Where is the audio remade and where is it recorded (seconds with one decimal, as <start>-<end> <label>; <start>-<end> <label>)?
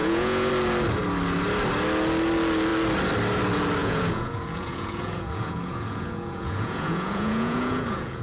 0.0-0.5 remade; 0.5-3.8 recorded; 3.8-8.2 remade